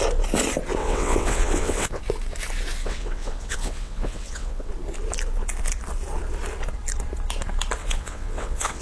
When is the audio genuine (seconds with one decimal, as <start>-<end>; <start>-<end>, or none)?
0.0-0.8; 2.0-2.8; 4.7-7.8